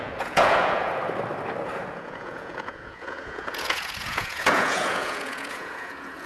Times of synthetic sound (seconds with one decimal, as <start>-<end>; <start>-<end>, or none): 0.0-0.9; 1.9-6.3

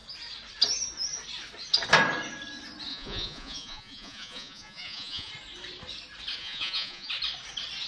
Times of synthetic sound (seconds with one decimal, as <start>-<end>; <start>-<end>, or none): 2.9-5.3; 6.4-7.1

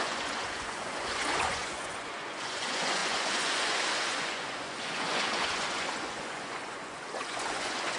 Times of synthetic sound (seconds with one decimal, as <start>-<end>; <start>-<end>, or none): 0.0-8.0

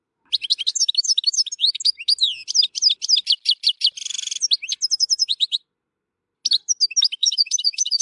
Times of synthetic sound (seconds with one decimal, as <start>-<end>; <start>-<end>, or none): 7.2-8.0